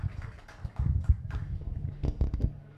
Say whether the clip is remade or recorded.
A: remade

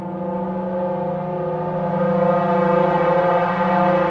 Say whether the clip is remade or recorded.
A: recorded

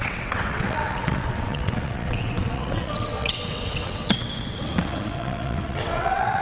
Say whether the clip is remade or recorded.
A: remade